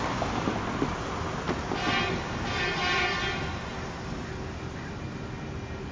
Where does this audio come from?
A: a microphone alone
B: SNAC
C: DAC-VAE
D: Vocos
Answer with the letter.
A